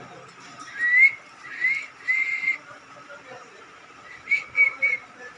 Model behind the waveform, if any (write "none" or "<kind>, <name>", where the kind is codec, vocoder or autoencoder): none